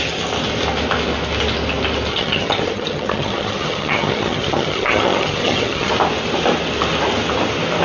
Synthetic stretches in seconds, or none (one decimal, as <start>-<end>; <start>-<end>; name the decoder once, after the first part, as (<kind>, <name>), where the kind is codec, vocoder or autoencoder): 2.1-5.9 (vocoder, HiFi-GAN)